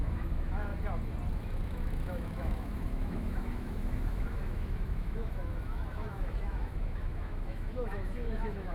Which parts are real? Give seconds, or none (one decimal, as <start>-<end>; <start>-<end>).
0.7-1.3